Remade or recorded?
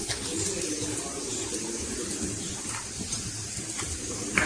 recorded